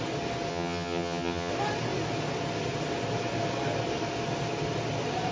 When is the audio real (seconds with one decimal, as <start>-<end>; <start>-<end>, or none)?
0.0-0.5; 1.5-5.3